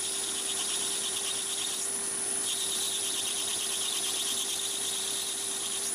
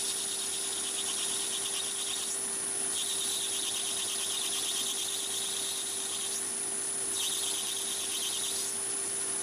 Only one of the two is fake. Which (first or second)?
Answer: first